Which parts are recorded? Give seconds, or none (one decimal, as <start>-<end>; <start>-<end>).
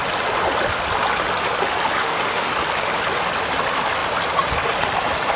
0.0-2.0; 2.5-5.4